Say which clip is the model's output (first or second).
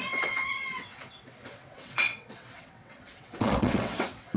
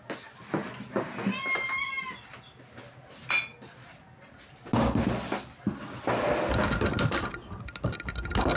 first